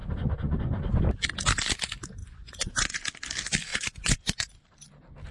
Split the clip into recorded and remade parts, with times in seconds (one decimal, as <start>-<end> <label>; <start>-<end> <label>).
0.0-1.0 remade; 1.0-2.2 recorded; 2.2-3.0 remade; 3.0-3.7 recorded; 3.7-4.5 remade; 4.5-5.3 recorded